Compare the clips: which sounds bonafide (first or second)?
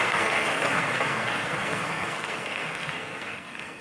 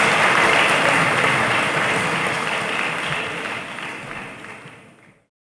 second